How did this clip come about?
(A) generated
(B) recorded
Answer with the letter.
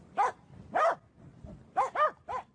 B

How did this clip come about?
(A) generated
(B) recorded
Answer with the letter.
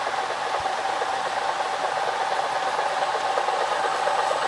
B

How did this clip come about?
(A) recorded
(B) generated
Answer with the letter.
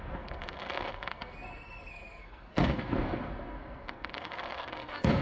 B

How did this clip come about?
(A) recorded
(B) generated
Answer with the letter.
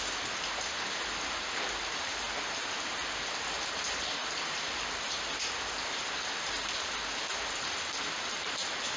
A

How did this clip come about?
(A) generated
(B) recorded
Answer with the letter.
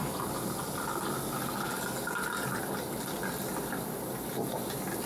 B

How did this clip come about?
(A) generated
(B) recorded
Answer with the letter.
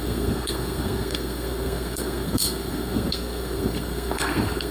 A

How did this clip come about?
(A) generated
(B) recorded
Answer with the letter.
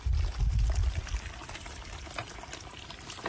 B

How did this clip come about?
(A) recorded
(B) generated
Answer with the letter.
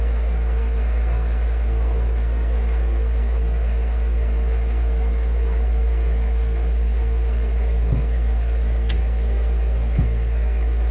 B